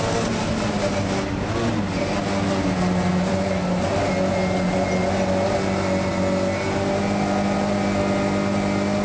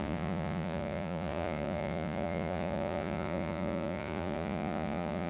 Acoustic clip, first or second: first